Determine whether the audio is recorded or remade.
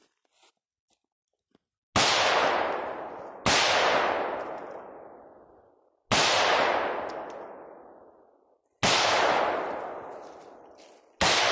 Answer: recorded